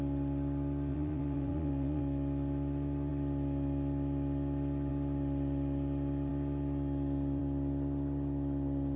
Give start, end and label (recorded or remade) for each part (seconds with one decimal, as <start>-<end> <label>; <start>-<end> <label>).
0.0-0.9 recorded; 0.9-2.0 remade; 2.0-9.0 recorded